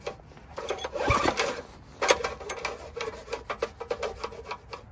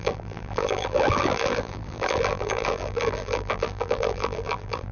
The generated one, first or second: second